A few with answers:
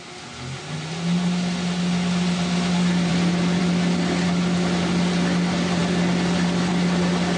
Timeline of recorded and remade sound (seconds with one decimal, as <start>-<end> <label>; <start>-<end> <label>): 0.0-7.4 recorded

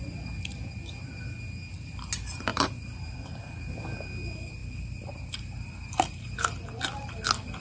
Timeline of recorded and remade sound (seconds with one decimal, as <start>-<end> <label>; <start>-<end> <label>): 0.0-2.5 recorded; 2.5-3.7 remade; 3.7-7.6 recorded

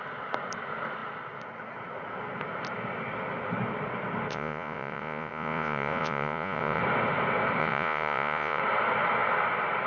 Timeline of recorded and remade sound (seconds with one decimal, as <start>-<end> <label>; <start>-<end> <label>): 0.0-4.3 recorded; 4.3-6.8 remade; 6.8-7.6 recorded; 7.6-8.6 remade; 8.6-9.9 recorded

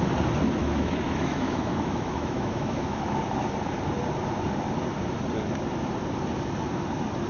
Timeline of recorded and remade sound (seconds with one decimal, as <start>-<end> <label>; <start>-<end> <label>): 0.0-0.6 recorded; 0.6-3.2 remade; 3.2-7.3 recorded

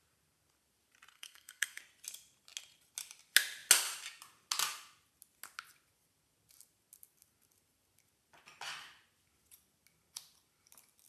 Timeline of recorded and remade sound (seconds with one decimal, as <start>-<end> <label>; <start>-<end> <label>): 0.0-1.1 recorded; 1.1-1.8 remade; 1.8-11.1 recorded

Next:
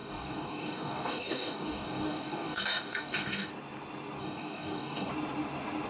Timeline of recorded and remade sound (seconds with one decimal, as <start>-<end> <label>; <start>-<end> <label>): 0.0-3.5 remade; 3.5-4.2 recorded; 4.2-5.1 remade; 5.1-5.9 recorded